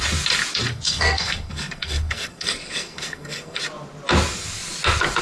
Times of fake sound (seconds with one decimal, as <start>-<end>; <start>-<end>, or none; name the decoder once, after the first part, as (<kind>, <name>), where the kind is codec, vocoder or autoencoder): 0.7-3.6 (codec, SNAC)